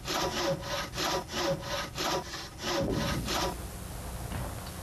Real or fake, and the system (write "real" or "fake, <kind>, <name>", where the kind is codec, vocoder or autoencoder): real